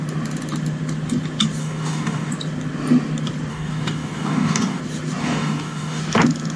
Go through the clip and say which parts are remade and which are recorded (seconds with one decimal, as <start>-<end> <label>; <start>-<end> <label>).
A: 0.0-1.6 recorded; 1.6-2.3 remade; 2.3-3.5 recorded; 3.5-4.8 remade; 4.8-5.2 recorded; 5.2-6.0 remade; 6.0-6.6 recorded